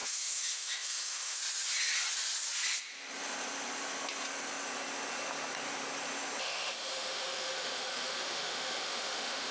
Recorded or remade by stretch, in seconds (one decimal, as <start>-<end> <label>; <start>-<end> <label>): 0.0-1.4 remade; 1.4-6.4 recorded; 6.4-9.5 remade